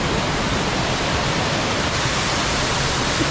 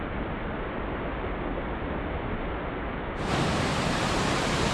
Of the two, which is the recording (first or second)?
second